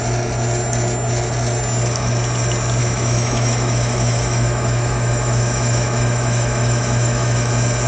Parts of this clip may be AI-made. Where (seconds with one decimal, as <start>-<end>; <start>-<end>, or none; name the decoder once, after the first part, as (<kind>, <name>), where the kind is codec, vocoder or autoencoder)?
2.8-7.5 (autoencoder, DAC-VAE)